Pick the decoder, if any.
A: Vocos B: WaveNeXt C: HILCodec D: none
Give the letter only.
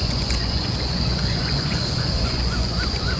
A